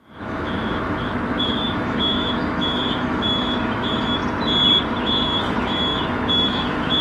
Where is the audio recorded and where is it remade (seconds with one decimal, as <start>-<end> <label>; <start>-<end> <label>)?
0.0-4.2 remade; 4.2-5.0 recorded; 5.0-7.0 remade